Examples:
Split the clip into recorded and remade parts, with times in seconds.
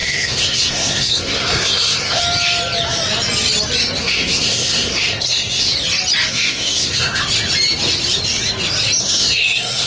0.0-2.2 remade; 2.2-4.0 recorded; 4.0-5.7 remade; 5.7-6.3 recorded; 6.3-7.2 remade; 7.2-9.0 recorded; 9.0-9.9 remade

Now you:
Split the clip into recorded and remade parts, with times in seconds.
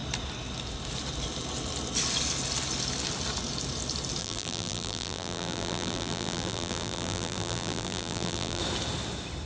0.0-4.2 recorded; 4.2-8.6 remade; 8.6-9.5 recorded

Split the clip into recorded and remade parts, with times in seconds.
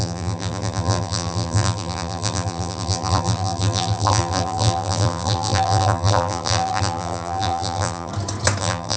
0.0-8.1 remade; 8.1-8.6 recorded; 8.6-9.0 remade